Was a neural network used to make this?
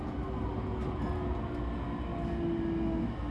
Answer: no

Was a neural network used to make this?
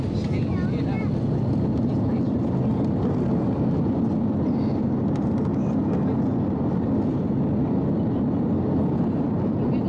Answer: no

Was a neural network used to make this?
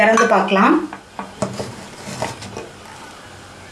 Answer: no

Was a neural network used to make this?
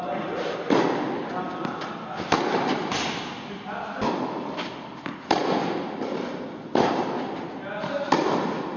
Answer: no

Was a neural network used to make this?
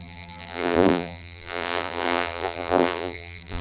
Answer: yes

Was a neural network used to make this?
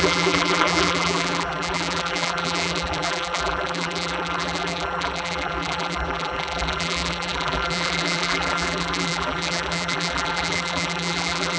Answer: yes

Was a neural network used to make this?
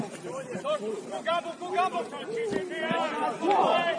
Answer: yes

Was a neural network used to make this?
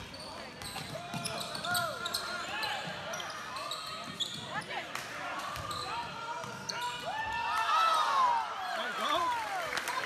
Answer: no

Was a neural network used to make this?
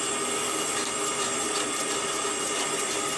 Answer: no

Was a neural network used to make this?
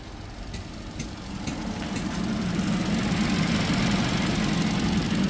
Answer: no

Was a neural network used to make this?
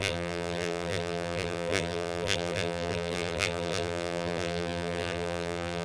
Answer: yes